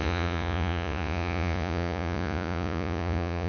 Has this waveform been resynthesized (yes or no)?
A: yes